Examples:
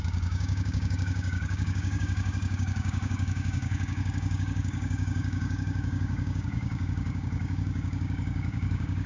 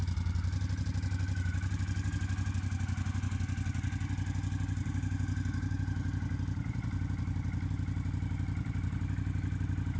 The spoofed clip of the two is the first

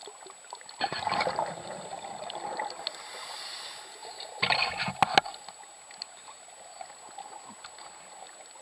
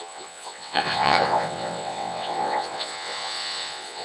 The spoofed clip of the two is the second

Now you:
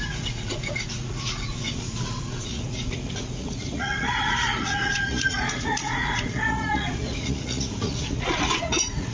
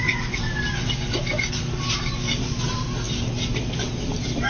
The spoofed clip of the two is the first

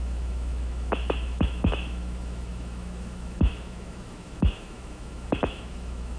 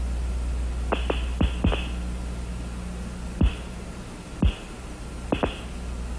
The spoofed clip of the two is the first